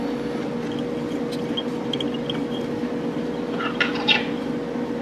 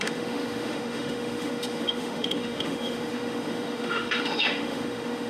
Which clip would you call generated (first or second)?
second